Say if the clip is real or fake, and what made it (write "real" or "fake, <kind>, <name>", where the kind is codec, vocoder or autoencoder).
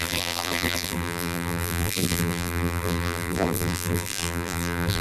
fake, vocoder, BigVGAN v2